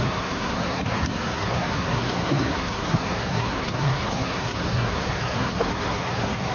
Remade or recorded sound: remade